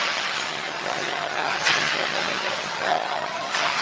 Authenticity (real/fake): fake